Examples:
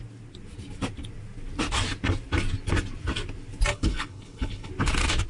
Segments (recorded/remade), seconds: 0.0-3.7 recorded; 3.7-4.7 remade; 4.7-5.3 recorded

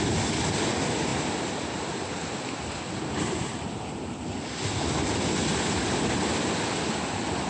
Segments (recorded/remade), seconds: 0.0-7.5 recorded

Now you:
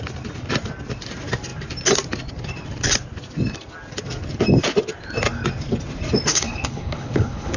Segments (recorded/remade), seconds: 0.0-6.3 recorded; 6.3-7.6 remade